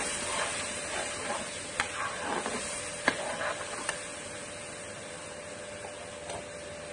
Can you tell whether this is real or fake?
real